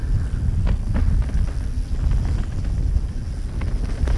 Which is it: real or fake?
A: real